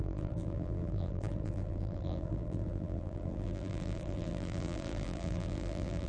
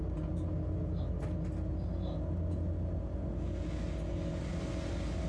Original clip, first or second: second